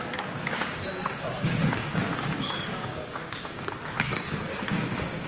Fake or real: fake